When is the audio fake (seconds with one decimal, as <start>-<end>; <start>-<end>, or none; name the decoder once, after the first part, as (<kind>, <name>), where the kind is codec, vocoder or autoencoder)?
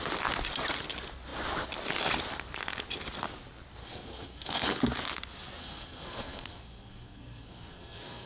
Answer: 3.8-4.8 (codec, SNAC); 5.6-8.3